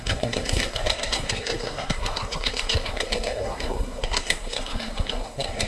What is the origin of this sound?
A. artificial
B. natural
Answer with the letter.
A